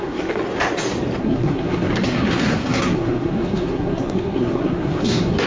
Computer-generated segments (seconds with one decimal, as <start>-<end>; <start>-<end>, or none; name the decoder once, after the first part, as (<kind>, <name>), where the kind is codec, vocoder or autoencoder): 0.0-0.4 (codec, SNAC); 1.2-5.5